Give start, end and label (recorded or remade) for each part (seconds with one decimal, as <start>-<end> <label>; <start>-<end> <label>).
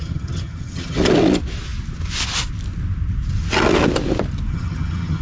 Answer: 0.0-1.0 remade; 1.0-4.5 recorded; 4.5-5.2 remade